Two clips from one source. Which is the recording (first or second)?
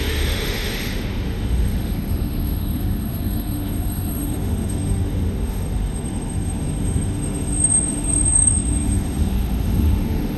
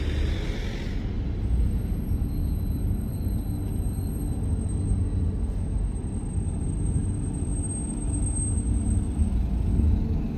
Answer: second